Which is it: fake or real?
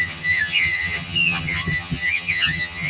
fake